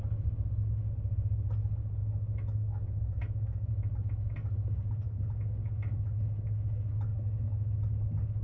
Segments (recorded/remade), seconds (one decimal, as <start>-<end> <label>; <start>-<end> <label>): 0.0-2.0 recorded; 2.0-3.7 remade; 3.7-7.1 recorded; 7.1-7.8 remade; 7.8-8.4 recorded